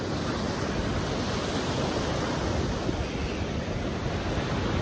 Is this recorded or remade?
recorded